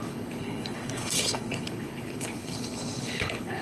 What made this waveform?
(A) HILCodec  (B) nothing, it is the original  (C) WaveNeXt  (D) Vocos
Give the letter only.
A